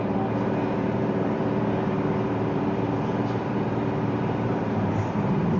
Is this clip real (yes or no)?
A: no